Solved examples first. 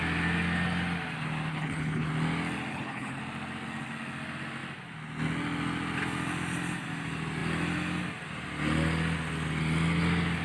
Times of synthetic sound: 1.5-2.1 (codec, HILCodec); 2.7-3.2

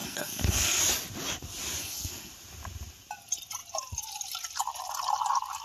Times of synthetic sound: 0.0-0.8 (codec, SNAC); 1.8-2.3